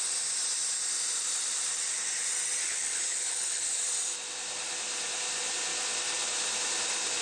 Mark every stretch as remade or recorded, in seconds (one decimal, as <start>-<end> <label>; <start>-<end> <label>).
0.0-2.6 recorded; 2.6-3.8 remade; 3.8-7.2 recorded